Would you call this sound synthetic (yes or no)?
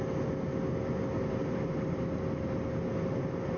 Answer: no